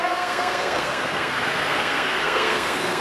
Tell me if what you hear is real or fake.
fake